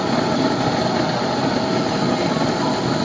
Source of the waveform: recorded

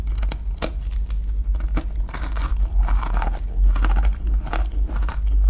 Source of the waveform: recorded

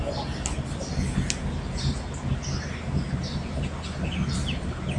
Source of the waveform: recorded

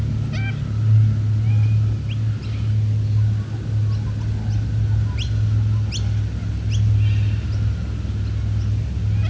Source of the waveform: recorded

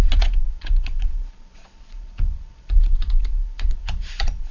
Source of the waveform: remade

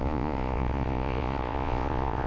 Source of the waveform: remade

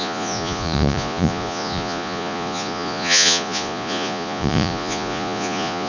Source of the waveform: remade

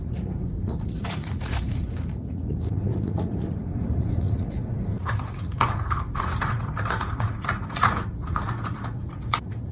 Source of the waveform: remade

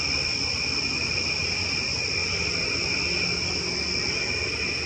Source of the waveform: recorded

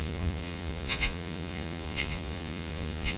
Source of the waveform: remade